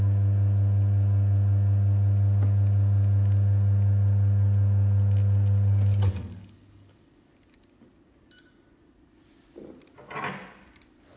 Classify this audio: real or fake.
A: real